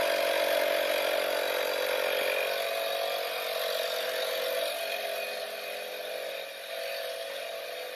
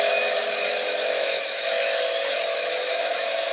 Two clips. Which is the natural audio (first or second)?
first